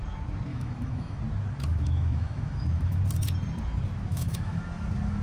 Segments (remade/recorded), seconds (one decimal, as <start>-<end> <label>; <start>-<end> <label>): 0.0-0.5 recorded; 0.5-1.2 remade; 1.2-1.7 recorded; 1.7-3.0 remade; 3.0-4.1 recorded; 4.1-4.6 remade; 4.6-5.2 recorded